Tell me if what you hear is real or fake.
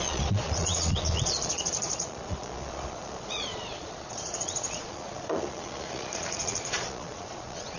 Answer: fake